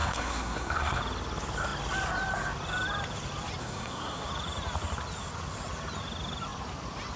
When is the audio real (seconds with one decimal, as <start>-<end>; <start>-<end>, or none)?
1.0-3.6; 4.3-7.2